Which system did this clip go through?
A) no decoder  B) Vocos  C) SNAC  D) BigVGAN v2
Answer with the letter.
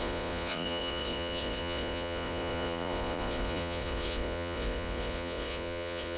B